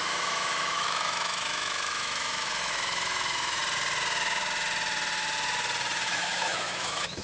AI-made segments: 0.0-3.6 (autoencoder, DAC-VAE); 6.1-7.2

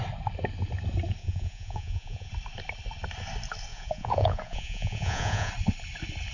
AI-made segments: 1.2-2.3 (vocoder, Vocos); 3.7-5.5

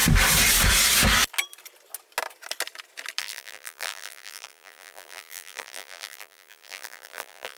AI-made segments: 3.2-7.6 (vocoder, BigVGAN v2)

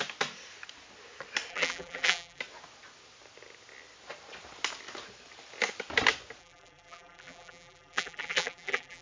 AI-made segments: 1.5-2.4 (vocoder, BigVGAN v2); 6.4-9.0

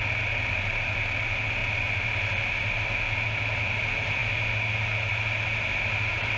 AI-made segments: none

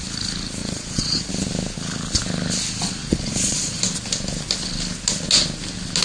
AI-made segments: 0.6-1.3 (vocoder, Vocos); 3.0-3.8